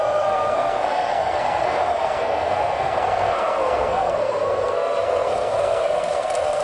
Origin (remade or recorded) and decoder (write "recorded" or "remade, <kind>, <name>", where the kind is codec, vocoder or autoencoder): remade, codec, SNAC